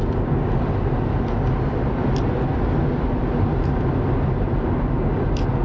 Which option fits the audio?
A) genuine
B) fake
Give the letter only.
A